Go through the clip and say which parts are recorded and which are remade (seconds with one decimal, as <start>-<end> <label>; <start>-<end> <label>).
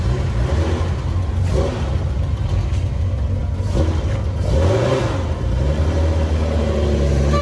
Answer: 0.0-7.4 recorded